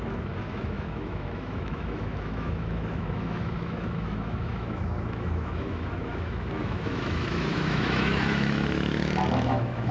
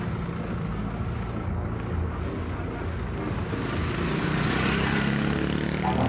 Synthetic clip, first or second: first